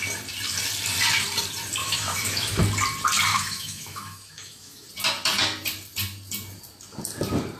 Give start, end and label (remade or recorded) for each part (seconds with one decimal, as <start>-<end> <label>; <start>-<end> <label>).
0.0-1.8 recorded; 1.8-2.6 remade; 2.6-3.3 recorded; 3.3-4.9 remade; 4.9-7.6 recorded